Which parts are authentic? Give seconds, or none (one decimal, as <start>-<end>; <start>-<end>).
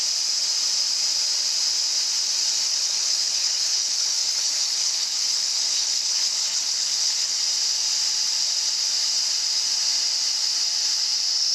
0.0-2.7; 7.4-11.5